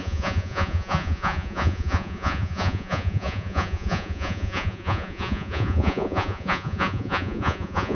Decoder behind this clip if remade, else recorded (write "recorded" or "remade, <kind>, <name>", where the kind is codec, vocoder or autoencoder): remade, vocoder, Vocos